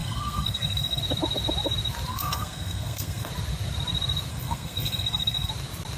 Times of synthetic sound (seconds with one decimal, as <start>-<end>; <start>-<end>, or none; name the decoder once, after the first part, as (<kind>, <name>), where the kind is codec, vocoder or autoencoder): 0.0-1.0 (codec, SNAC); 2.1-3.3; 4.3-5.5